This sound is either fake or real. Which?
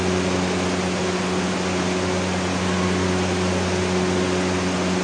real